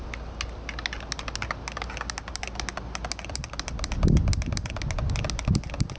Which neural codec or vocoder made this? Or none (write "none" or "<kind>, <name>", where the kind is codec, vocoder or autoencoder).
none